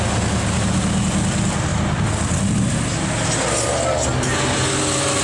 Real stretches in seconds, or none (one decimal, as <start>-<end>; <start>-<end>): 0.0-5.2